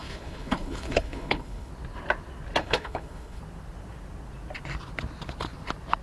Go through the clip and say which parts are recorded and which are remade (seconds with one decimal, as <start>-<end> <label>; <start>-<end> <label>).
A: 0.0-1.7 remade; 1.7-2.6 recorded; 2.6-3.4 remade; 3.4-6.0 recorded